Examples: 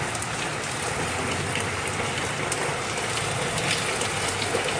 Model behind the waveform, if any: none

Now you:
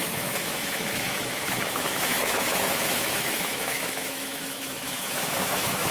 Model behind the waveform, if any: autoencoder, DAC-VAE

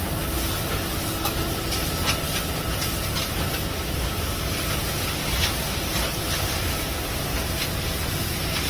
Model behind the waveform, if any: none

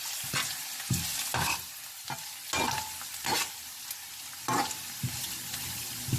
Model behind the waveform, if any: none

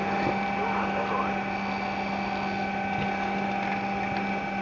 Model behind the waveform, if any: none